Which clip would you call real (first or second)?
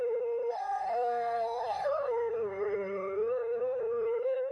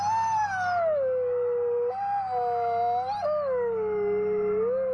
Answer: second